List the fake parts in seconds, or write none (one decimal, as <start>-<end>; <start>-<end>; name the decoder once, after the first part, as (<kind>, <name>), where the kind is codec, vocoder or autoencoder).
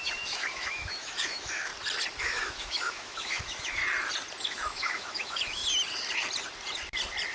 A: 0.0-1.7 (autoencoder, DAC-VAE); 2.2-3.8; 4.4-5.6